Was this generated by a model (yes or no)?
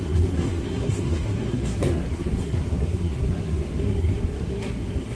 yes